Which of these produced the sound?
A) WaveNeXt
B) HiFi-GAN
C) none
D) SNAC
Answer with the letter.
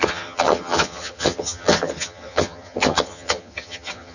B